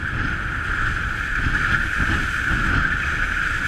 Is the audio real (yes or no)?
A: yes